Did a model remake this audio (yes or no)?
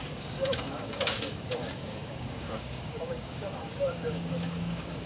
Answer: yes